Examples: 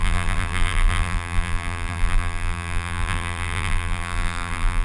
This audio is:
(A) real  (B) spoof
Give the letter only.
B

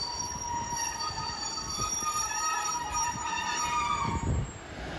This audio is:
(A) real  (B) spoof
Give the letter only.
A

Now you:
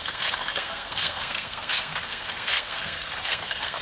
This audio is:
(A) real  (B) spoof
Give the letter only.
B